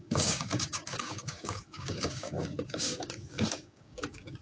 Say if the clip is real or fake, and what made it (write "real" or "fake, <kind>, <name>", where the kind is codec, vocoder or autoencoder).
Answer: fake, codec, DAC